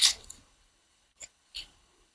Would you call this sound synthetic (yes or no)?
yes